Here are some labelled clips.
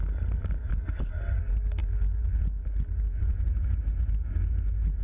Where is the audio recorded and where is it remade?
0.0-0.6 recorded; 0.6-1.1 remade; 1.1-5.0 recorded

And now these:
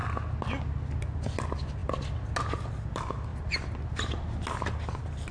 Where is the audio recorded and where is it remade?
0.0-5.3 recorded

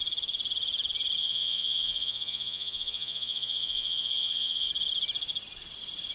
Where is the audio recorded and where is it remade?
0.0-1.2 recorded; 1.2-4.7 remade; 4.7-6.1 recorded

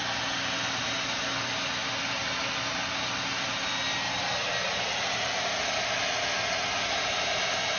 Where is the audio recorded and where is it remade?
0.0-7.8 recorded

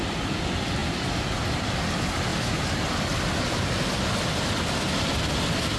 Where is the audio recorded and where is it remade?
0.0-5.8 recorded

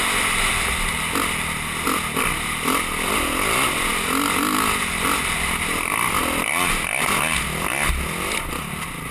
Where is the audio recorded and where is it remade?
0.0-9.1 recorded